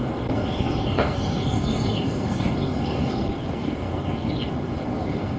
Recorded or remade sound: remade